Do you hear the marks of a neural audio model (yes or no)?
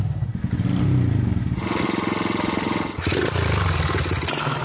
no